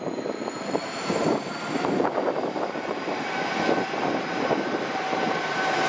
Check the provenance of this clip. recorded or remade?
remade